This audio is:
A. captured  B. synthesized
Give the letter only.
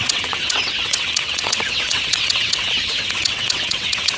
B